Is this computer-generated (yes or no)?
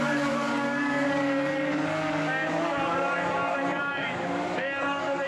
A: yes